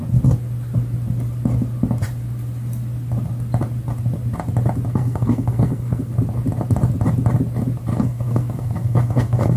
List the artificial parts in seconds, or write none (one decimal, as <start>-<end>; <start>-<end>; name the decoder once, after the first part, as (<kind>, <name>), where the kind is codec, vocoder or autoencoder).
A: 4.9-6.1 (codec, SNAC); 7.9-9.6